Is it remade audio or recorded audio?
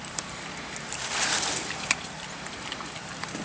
remade